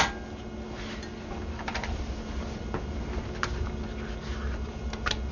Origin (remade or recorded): recorded